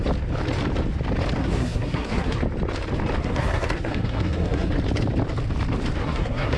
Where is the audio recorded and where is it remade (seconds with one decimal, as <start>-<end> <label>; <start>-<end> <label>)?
0.0-1.4 recorded; 1.4-2.4 remade; 2.4-3.2 recorded; 3.2-4.7 remade; 4.7-6.0 recorded; 6.0-6.6 remade